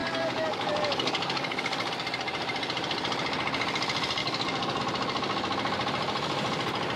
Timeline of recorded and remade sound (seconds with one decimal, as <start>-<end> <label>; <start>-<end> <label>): 0.0-1.9 remade; 1.9-4.2 recorded; 4.2-4.8 remade; 4.8-7.0 recorded